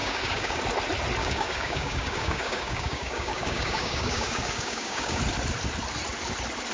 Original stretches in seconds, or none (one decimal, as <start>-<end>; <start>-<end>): 0.6-1.2; 5.2-6.7